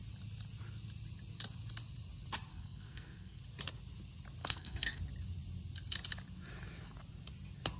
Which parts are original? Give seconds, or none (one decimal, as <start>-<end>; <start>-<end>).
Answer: 0.0-2.5; 3.4-4.4; 5.0-7.8